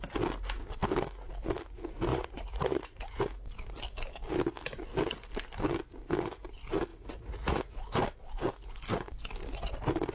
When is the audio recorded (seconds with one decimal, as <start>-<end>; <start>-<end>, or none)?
0.0-2.1; 3.2-6.9; 7.6-10.1